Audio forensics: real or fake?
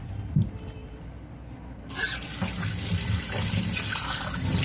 real